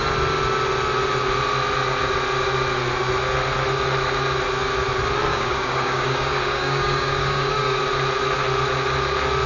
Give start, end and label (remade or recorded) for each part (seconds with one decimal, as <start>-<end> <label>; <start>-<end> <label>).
0.0-5.3 recorded; 5.3-7.8 remade; 7.8-9.5 recorded